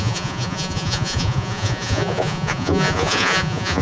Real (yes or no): no